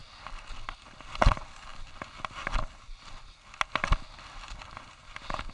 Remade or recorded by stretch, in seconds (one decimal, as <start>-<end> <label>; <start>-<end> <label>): 0.0-5.5 recorded